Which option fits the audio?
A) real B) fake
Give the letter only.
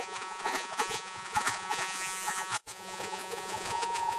B